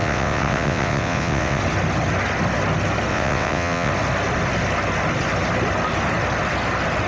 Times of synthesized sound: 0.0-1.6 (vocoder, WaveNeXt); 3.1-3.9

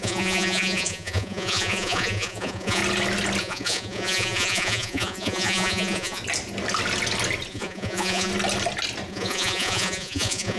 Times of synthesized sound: 0.0-2.8 (vocoder, Vocos); 3.4-6.2; 7.5-8.3; 9.1-10.6

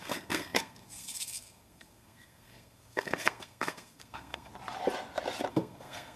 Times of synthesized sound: 0.0-4.5 (codec, SNAC); 5.5-6.2

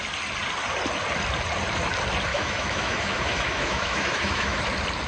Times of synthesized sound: 2.3-4.6 (autoencoder, DAC-VAE)

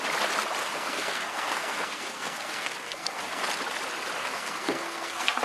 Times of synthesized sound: 0.6-3.5 (codec, SNAC); 4.2-5.4

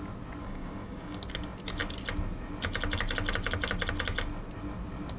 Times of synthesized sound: 0.4-1.2 (codec, DAC)

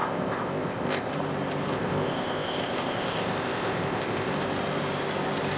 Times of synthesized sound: 0.0-1.1 (codec, ZipCodec); 1.7-4.3